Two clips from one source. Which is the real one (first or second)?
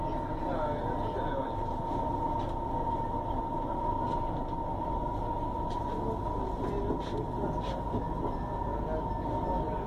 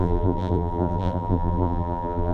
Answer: first